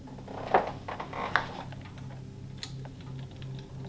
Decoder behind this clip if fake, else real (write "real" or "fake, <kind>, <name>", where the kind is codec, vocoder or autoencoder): real